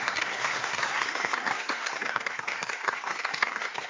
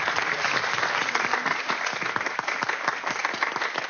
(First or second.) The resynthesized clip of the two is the first